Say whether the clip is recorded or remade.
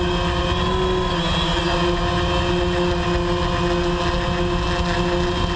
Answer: recorded